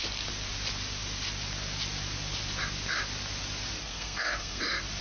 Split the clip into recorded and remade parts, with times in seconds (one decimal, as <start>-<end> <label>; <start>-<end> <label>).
0.0-3.8 recorded; 3.8-4.6 remade; 4.6-5.0 recorded